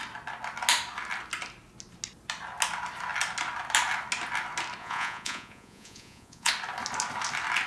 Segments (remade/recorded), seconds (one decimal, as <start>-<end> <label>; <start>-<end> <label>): 0.0-4.8 recorded; 4.8-6.5 remade; 6.5-7.7 recorded